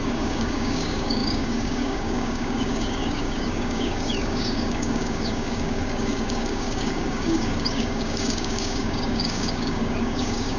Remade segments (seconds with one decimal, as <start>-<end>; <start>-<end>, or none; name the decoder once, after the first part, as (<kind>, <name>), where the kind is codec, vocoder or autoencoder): 0.0-10.6 (codec, DAC)